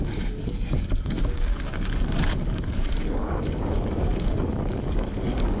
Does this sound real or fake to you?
fake